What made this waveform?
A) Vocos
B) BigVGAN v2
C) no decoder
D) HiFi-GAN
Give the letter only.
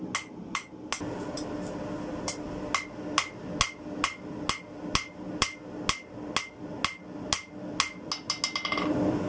C